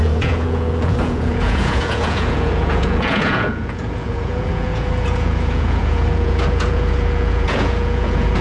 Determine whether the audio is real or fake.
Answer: fake